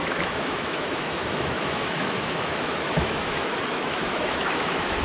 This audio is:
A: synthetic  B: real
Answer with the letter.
A